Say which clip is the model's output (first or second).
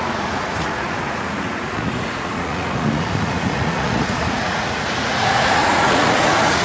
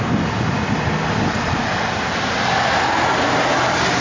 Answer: first